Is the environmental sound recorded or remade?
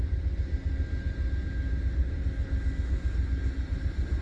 recorded